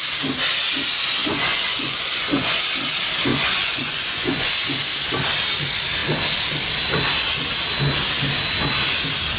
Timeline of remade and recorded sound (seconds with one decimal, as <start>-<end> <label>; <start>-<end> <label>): 0.0-1.2 recorded; 1.2-2.6 remade; 2.6-3.3 recorded; 3.3-4.5 remade; 4.5-9.4 recorded